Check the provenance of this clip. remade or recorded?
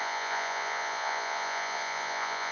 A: remade